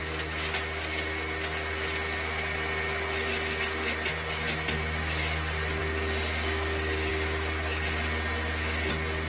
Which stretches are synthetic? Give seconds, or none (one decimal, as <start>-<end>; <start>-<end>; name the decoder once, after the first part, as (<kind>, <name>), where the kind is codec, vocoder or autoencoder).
none

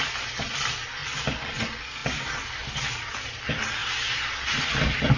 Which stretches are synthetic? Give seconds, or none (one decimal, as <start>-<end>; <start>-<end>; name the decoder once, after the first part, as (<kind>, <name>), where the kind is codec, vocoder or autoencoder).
2.0-3.4 (vocoder, BigVGAN v2); 3.8-4.6

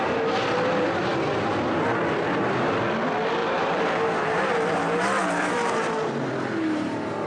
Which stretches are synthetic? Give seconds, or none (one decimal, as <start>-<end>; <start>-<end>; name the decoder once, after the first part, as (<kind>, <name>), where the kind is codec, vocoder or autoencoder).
3.4-6.3 (vocoder, BigVGAN v2)

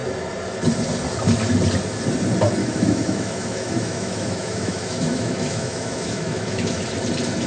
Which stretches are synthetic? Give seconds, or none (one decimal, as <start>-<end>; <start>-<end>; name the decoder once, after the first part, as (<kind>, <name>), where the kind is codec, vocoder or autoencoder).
2.6-6.8 (autoencoder, DAC-VAE)

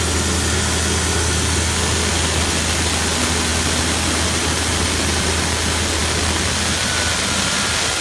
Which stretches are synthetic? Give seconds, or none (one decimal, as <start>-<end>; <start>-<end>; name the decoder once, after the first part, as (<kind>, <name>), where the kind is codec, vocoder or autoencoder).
none